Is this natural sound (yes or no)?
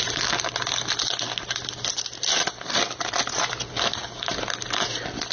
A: yes